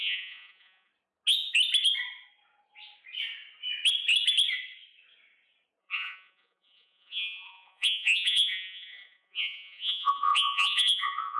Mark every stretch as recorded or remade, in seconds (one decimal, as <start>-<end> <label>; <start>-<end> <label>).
0.0-0.9 remade; 0.9-5.8 recorded; 5.8-11.4 remade